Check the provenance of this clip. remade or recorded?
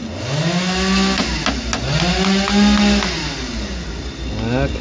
recorded